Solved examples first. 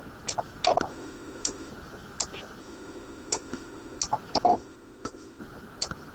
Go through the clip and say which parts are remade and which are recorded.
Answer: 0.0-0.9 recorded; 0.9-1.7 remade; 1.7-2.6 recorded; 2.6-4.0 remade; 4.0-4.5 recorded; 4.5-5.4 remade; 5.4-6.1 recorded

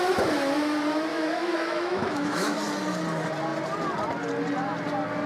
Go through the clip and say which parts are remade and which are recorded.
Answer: 0.0-1.1 recorded; 1.1-2.6 remade; 2.6-5.3 recorded

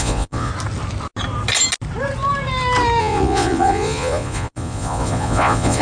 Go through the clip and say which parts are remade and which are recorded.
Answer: 0.0-0.5 remade; 0.5-3.0 recorded; 3.0-5.8 remade

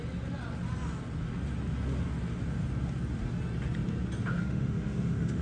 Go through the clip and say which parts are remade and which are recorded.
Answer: 0.0-4.4 recorded; 4.4-5.4 remade